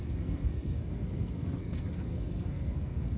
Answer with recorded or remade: remade